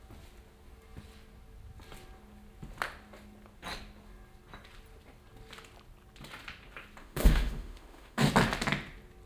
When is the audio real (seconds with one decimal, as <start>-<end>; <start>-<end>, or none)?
0.0-7.0; 8.3-9.3

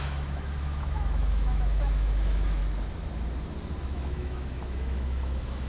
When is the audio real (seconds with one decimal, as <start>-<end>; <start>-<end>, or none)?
2.6-3.8

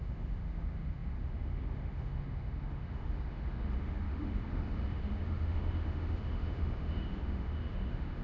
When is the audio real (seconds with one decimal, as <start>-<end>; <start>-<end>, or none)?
none

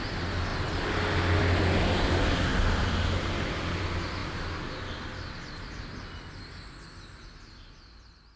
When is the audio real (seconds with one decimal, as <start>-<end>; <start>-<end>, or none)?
0.0-8.4

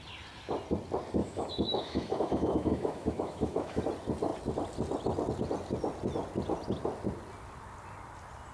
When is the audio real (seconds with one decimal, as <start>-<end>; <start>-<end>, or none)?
0.0-1.2; 3.8-8.5